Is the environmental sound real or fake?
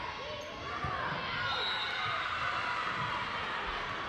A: real